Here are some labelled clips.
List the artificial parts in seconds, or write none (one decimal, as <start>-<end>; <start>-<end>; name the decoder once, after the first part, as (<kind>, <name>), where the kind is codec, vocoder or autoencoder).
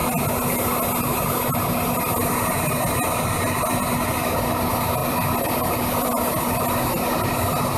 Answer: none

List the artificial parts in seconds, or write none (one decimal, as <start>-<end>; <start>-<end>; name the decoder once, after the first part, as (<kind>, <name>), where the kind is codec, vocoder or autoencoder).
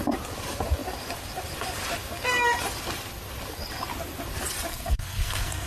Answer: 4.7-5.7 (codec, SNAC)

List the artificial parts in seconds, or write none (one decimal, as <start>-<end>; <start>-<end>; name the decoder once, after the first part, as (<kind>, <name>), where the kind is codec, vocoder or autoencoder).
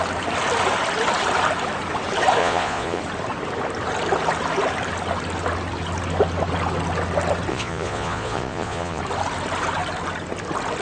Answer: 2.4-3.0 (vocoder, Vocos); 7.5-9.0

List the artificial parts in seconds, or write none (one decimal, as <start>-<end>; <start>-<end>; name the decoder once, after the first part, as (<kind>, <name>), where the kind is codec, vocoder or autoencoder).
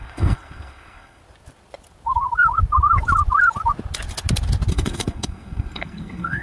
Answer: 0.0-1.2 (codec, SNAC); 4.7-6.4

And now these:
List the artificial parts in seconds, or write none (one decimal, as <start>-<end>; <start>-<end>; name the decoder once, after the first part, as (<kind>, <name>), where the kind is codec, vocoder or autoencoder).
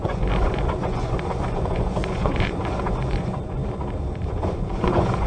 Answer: 0.0-3.6 (vocoder, Vocos); 4.3-5.3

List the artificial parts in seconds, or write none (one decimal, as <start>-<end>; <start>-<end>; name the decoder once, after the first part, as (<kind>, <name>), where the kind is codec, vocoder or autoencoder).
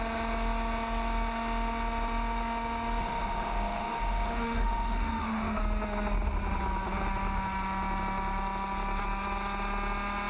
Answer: 3.0-5.6 (autoencoder, DAC-VAE)